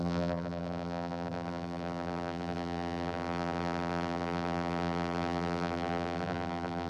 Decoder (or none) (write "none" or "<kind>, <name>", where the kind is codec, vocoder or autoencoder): vocoder, BigVGAN v2